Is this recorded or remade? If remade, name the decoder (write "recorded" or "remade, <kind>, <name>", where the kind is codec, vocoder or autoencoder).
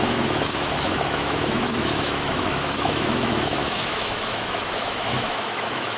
remade, autoencoder, DAC-VAE